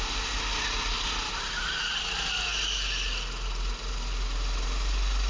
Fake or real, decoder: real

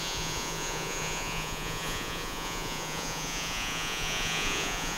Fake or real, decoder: fake, vocoder, Vocos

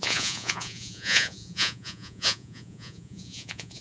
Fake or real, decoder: fake, vocoder, Vocos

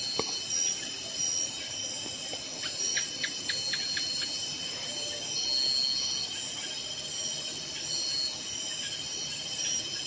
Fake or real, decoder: real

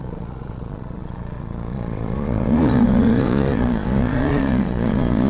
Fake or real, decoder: fake, vocoder, Vocos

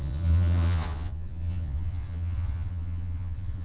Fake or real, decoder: fake, vocoder, Vocos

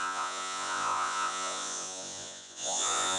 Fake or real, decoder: fake, vocoder, Vocos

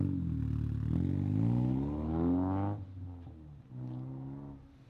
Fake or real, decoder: real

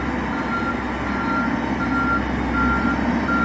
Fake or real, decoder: real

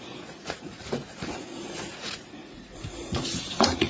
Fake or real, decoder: fake, vocoder, Vocos